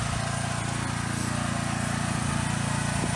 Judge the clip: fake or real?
real